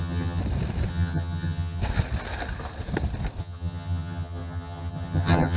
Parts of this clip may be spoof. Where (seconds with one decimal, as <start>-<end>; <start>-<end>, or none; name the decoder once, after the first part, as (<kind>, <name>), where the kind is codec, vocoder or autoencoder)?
0.0-0.4 (vocoder, HiFi-GAN); 0.9-1.8; 3.4-5.6